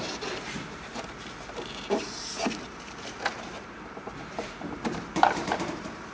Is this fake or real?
fake